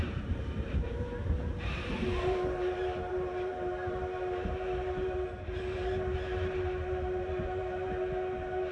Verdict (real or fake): fake